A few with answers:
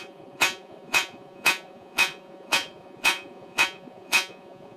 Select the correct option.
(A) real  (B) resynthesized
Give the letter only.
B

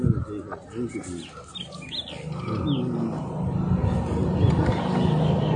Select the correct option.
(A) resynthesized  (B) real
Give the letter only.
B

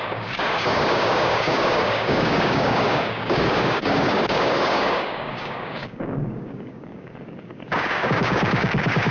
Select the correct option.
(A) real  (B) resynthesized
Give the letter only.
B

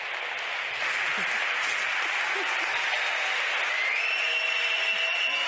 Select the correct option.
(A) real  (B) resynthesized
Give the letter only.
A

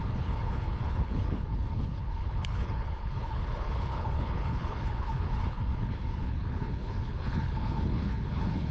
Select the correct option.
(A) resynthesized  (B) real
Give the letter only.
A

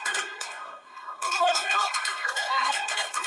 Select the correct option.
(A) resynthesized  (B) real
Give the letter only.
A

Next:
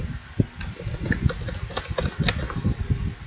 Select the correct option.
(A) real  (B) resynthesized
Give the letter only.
A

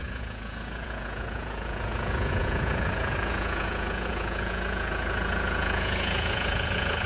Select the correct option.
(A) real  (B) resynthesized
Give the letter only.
B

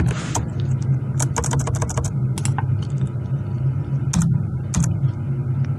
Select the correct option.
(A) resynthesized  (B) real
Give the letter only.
B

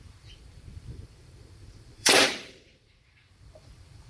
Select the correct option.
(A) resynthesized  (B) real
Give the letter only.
A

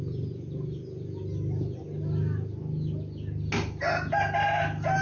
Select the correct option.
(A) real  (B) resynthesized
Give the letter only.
A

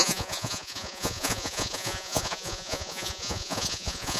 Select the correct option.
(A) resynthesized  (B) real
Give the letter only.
A